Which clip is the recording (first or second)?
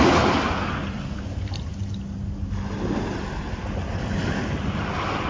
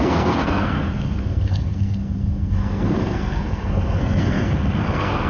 first